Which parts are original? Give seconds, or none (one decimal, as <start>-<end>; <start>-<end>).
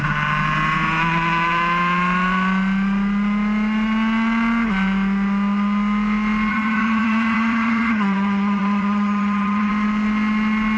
0.0-6.5; 9.7-10.8